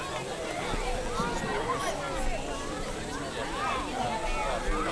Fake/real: real